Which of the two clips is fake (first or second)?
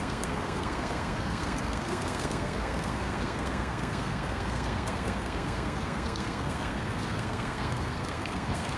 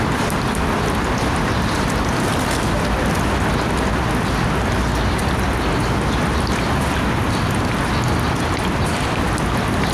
first